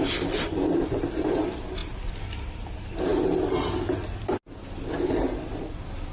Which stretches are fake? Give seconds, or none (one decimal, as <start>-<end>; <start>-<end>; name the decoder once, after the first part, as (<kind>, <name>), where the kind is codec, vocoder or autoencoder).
3.1-3.7 (vocoder, BigVGAN v2)